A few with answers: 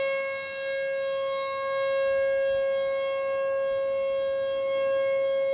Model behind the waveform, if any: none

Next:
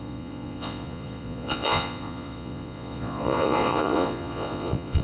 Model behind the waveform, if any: vocoder, Vocos